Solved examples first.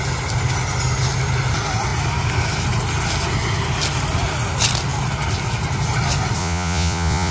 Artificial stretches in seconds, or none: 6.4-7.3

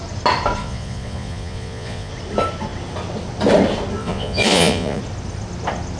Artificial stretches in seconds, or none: 0.6-2.1; 4.0-5.0

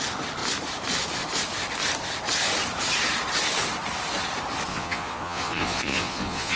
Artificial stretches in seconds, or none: 4.7-6.6

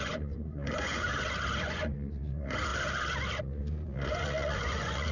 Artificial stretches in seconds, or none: 0.0-1.1; 1.6-2.7; 3.4-5.1